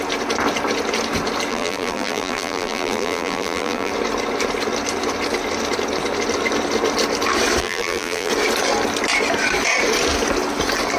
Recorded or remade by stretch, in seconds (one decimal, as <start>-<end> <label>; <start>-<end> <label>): 0.0-1.5 recorded; 1.5-3.9 remade; 3.9-7.6 recorded; 7.6-8.3 remade; 8.3-11.0 recorded